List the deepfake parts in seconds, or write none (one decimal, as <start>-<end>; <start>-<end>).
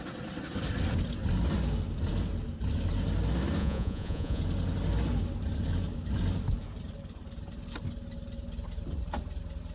3.6-4.4